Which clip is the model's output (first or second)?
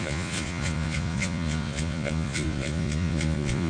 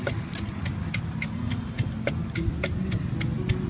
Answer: first